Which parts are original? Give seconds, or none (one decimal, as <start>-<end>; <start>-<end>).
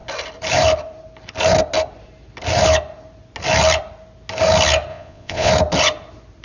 0.0-4.9; 5.5-6.4